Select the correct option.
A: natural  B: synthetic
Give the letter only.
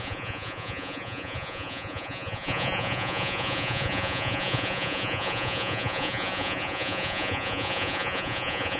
B